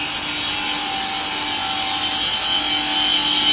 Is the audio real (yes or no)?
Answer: yes